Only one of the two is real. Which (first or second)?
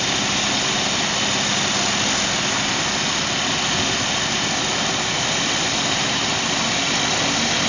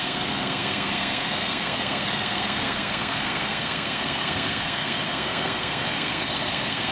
first